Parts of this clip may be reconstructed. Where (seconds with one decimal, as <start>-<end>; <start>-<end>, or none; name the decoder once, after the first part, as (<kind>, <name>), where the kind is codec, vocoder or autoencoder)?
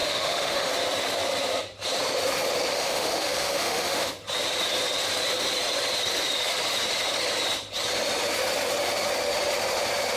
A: 0.0-0.7 (autoencoder, DAC-VAE); 2.7-4.1